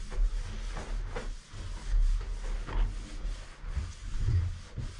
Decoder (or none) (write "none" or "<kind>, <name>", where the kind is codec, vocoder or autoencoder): none